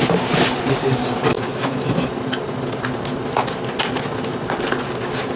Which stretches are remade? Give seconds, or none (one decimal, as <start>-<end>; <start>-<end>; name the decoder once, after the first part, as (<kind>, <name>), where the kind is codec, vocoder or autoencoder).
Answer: 1.3-1.9 (autoencoder, DAC-VAE)